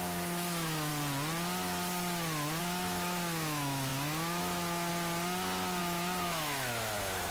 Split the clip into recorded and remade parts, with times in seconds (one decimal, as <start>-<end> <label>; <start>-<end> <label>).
0.0-0.9 remade; 0.9-2.6 recorded; 2.6-4.9 remade; 4.9-5.8 recorded; 5.8-7.3 remade